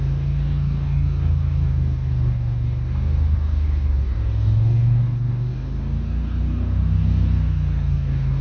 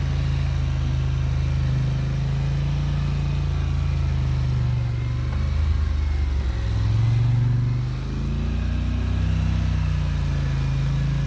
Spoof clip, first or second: first